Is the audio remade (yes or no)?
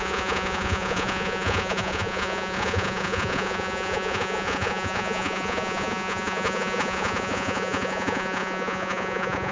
yes